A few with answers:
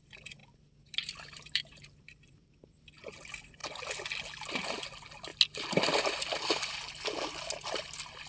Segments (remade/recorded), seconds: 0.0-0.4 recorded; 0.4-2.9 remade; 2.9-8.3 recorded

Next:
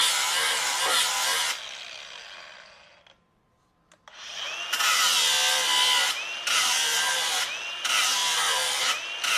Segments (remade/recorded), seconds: 0.0-9.4 recorded